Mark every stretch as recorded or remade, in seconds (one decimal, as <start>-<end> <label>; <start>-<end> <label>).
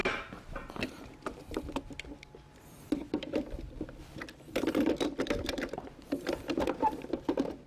0.0-0.8 recorded; 0.8-7.7 remade